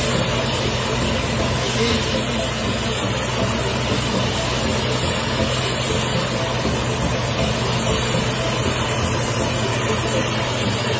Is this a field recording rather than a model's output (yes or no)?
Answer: yes